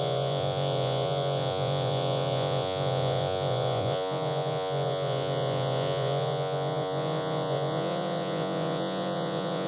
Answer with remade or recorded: remade